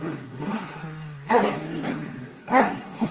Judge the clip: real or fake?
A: fake